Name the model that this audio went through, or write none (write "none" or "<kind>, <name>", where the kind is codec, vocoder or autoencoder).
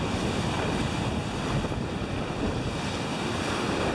none